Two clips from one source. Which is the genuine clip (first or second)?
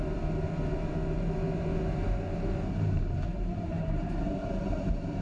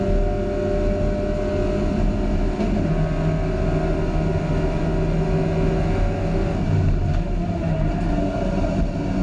second